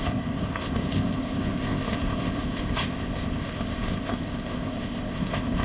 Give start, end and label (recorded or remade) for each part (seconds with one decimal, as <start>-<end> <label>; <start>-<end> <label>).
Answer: 0.0-5.6 remade